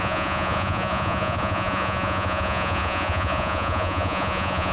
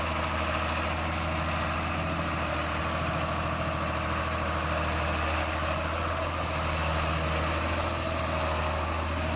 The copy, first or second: first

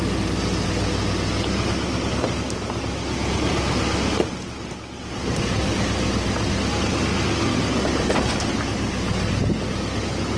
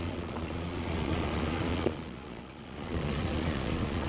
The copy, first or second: second